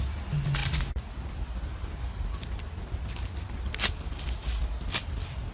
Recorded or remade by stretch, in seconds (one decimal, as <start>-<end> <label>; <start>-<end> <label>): 0.0-5.5 recorded